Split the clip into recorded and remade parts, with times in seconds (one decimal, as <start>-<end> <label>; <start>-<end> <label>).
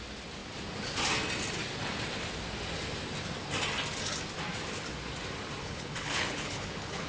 0.0-5.6 recorded; 5.6-7.1 remade